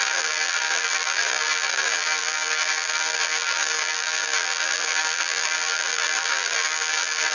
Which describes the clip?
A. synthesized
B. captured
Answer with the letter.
A